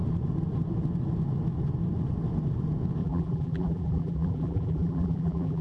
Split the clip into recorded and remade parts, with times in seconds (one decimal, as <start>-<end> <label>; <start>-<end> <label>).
0.0-3.0 recorded; 3.0-5.6 remade